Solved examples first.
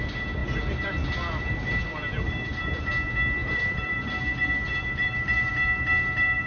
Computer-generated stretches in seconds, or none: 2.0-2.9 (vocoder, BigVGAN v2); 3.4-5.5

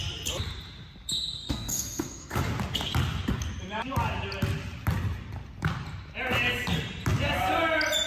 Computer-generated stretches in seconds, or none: 1.4-2.4 (codec, SNAC)

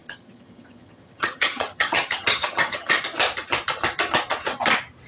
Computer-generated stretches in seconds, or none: 0.0-2.9 (vocoder, HiFi-GAN)